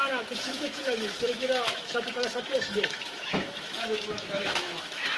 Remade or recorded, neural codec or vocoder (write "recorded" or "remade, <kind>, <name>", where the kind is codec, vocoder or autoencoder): remade, autoencoder, DAC-VAE